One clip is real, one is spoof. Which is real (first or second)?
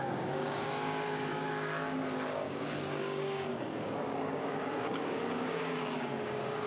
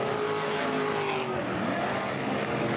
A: second